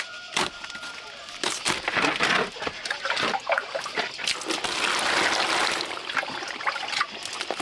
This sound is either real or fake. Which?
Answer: real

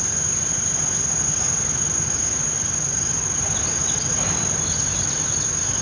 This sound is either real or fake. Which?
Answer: real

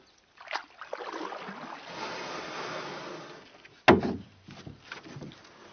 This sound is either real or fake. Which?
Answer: real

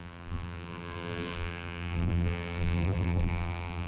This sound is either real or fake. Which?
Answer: fake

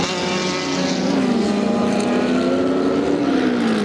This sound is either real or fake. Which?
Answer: real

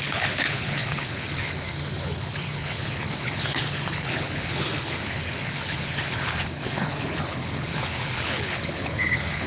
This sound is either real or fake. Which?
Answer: fake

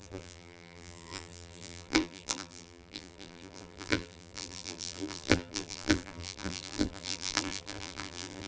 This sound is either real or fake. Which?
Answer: fake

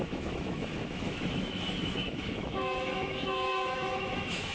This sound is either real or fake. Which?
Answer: fake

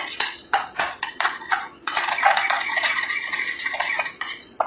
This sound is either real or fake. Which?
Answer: fake